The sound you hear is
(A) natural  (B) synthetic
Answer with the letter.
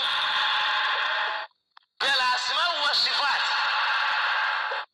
A